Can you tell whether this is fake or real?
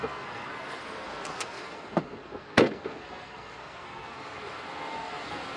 fake